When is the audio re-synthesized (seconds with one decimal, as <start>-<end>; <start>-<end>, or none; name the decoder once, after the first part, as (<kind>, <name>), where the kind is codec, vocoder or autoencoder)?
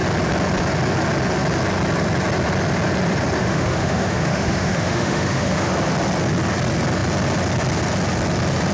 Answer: 3.4-5.7 (autoencoder, DAC-VAE)